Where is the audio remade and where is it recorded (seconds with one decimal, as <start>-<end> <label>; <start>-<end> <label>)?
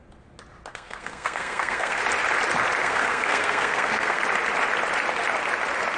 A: 0.0-0.7 recorded; 0.7-2.0 remade; 2.0-2.8 recorded; 2.8-4.2 remade; 4.2-6.0 recorded